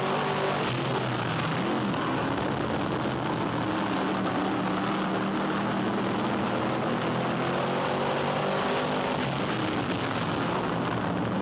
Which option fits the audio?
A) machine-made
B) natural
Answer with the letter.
B